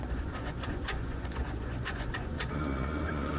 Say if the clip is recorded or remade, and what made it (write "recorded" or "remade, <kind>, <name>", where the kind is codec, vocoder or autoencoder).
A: remade, vocoder, Vocos